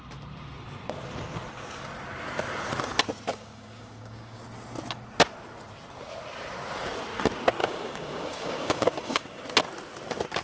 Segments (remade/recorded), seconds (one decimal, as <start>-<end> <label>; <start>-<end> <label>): 0.0-3.3 recorded; 3.3-4.4 remade; 4.4-7.6 recorded; 7.6-9.4 remade; 9.4-10.4 recorded